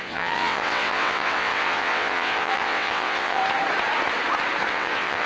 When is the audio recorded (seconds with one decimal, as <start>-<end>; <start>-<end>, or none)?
3.4-4.7